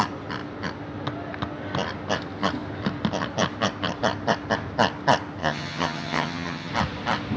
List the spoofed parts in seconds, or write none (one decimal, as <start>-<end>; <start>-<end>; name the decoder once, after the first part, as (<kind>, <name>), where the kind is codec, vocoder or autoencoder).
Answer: 5.4-6.7 (vocoder, HiFi-GAN)